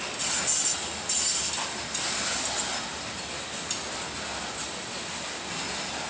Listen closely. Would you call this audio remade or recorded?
recorded